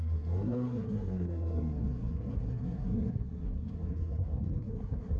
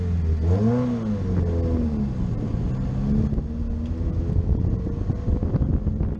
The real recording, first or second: second